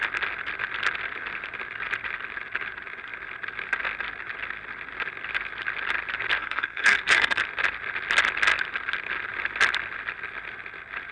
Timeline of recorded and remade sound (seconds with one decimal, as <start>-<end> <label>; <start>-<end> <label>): 0.0-6.4 recorded; 6.4-7.4 remade; 7.4-11.1 recorded